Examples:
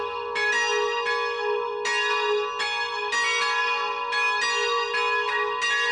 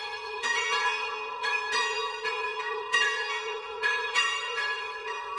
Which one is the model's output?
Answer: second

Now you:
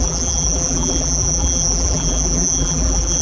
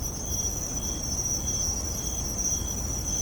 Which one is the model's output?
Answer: first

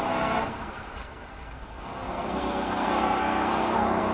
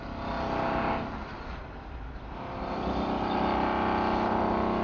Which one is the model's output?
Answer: first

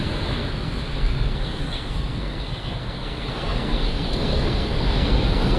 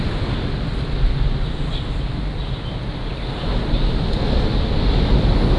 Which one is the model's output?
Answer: first